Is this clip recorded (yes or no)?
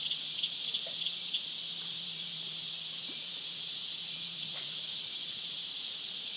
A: no